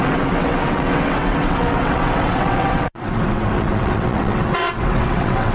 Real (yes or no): no